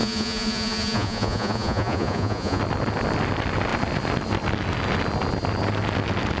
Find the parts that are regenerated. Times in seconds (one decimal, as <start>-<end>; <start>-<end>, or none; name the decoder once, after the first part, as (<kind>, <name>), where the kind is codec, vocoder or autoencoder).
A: 0.0-2.6 (vocoder, Vocos)